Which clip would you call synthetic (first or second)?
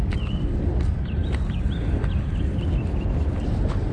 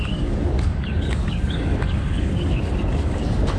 second